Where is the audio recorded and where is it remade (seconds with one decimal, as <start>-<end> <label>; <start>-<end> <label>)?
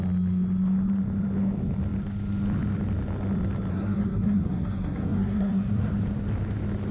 0.0-3.7 recorded; 3.7-5.9 remade; 5.9-6.9 recorded